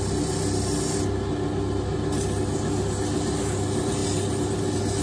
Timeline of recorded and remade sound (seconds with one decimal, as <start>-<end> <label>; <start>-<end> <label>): 0.0-5.0 recorded